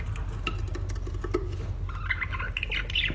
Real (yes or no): yes